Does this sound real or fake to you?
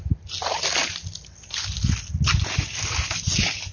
real